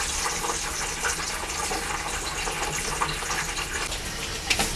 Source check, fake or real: real